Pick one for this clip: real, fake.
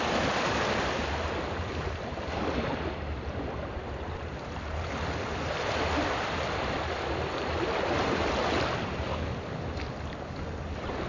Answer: real